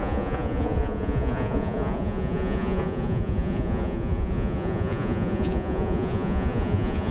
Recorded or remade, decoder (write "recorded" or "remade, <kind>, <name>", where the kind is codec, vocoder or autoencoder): remade, vocoder, Vocos